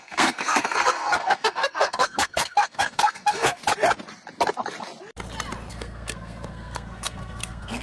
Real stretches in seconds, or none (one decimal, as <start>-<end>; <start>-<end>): 3.6-5.7